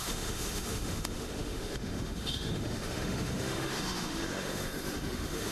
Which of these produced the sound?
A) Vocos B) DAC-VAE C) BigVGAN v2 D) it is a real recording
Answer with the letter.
B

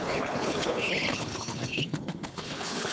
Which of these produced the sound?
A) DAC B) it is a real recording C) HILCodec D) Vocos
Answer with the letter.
C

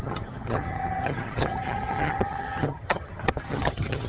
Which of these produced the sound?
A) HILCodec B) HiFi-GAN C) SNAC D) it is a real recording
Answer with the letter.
B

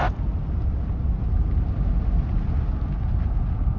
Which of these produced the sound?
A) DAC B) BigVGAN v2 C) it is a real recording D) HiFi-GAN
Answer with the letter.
C